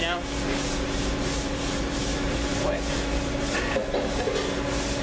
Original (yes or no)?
yes